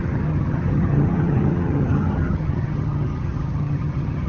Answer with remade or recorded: remade